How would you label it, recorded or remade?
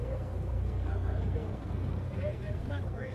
remade